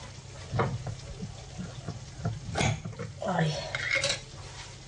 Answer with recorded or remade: recorded